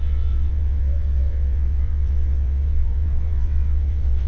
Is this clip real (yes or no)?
no